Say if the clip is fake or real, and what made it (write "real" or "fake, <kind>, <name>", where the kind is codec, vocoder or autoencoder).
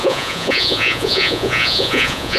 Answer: fake, vocoder, Vocos